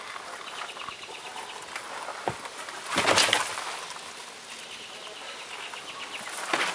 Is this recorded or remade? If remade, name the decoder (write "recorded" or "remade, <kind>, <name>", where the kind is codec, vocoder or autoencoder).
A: recorded